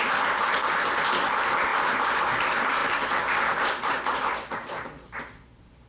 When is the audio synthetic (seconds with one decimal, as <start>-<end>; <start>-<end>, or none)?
2.8-4.2